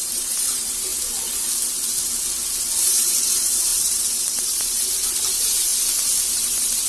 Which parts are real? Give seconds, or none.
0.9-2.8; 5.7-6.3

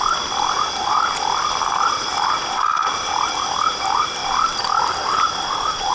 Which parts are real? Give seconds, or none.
0.0-2.1; 3.7-4.2

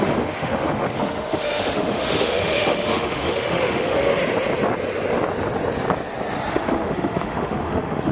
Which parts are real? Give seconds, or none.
4.1-6.5

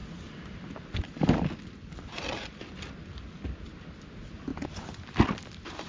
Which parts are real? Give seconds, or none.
0.0-5.9

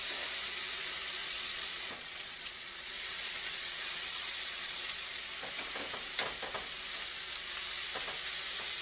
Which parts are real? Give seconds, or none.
0.0-1.2; 5.2-8.8